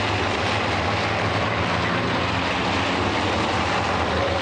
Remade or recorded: recorded